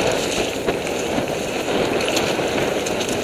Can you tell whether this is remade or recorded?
recorded